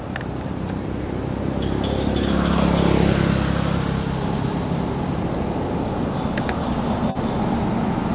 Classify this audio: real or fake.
real